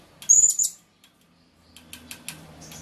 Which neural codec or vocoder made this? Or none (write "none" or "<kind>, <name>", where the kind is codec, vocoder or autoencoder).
none